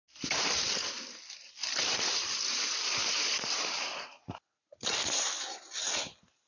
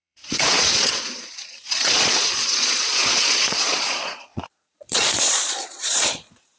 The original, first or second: first